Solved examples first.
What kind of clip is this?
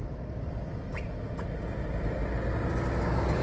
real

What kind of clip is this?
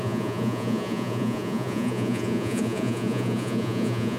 fake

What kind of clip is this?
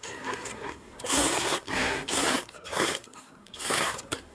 fake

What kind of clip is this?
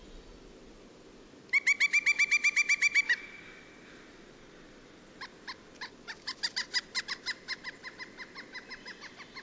real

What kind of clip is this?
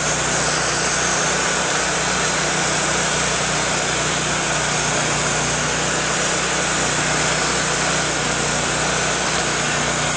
fake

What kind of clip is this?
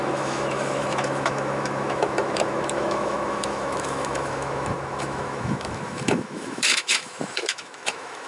fake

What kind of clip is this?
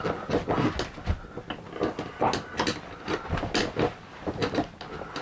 real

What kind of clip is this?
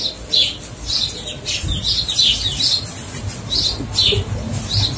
real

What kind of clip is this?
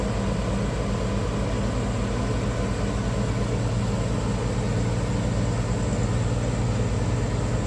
real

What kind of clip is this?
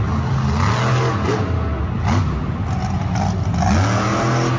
real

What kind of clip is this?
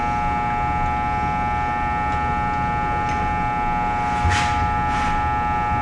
real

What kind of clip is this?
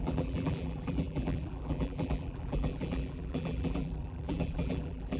fake